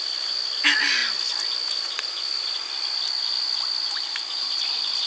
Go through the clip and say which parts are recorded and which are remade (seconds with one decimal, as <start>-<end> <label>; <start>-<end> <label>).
0.0-5.1 recorded